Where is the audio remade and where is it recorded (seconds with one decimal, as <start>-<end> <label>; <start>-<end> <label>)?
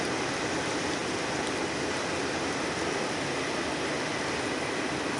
0.0-5.2 recorded